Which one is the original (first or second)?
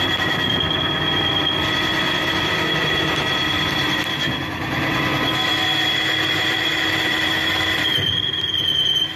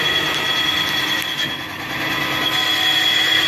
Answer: second